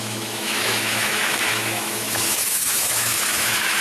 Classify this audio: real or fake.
fake